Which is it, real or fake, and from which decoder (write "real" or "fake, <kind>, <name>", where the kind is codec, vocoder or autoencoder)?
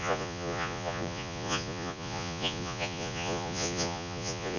fake, vocoder, Vocos